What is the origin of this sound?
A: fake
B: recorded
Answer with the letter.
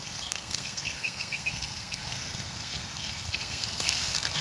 A